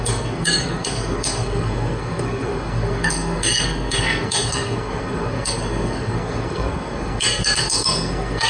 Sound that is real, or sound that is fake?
fake